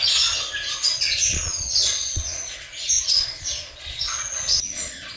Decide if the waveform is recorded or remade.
remade